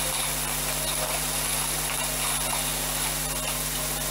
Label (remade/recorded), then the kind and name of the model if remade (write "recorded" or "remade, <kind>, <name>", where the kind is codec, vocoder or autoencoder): recorded